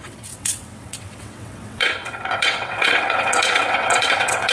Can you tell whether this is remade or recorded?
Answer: remade